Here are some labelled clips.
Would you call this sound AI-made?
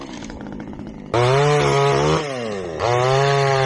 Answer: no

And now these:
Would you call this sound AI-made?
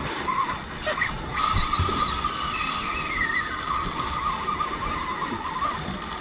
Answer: no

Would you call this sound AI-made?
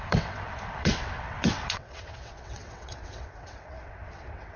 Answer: yes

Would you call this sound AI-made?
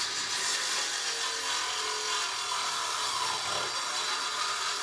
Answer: no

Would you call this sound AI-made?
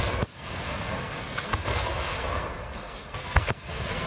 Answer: yes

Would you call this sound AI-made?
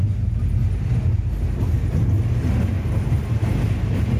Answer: no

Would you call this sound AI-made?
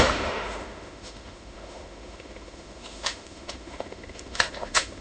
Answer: yes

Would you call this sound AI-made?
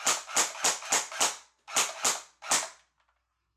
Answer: no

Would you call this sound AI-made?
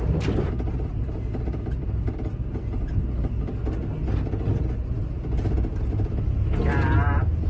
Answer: no